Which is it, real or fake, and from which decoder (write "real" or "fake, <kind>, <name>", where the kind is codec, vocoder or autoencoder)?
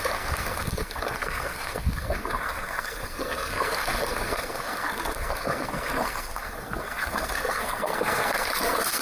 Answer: fake, codec, SNAC